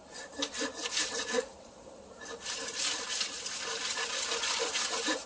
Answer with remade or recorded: recorded